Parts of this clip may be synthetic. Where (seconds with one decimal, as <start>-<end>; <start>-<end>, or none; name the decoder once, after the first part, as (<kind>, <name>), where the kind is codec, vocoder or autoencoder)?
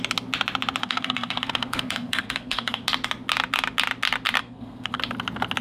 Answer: 0.8-2.8 (codec, SNAC); 4.4-5.0